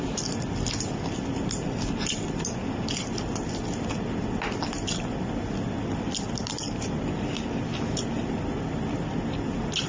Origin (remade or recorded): recorded